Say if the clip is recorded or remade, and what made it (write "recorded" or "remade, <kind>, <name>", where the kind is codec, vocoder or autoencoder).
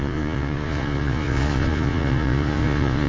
remade, vocoder, Vocos